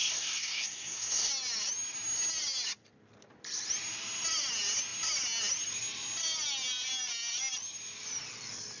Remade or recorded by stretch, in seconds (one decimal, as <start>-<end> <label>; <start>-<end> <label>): 0.0-1.3 remade; 1.3-8.8 recorded